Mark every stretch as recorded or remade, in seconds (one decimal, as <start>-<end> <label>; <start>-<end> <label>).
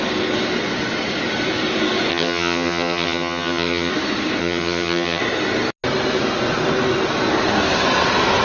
0.0-2.1 recorded; 2.1-3.9 remade; 3.9-4.4 recorded; 4.4-5.2 remade; 5.2-8.4 recorded